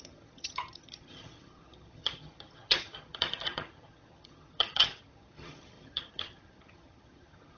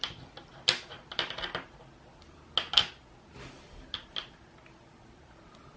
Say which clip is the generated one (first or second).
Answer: first